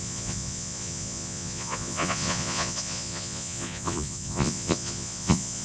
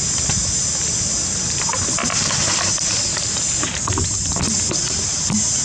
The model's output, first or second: first